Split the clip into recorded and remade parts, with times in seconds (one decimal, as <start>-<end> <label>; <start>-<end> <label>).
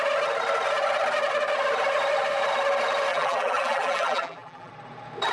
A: 0.0-3.1 recorded; 3.1-4.7 remade; 4.7-5.3 recorded